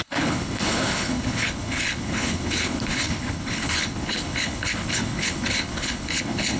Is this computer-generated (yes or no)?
yes